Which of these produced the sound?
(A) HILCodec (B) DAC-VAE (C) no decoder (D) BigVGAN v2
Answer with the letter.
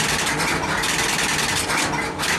C